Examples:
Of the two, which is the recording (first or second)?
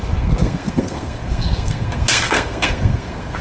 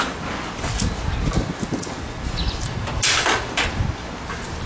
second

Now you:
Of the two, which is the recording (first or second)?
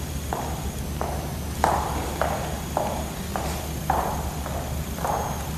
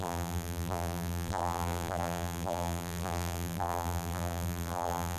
first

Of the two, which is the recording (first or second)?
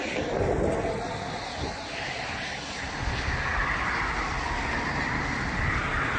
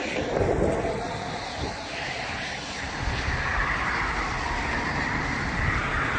first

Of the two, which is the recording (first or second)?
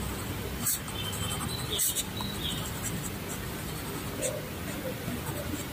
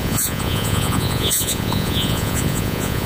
first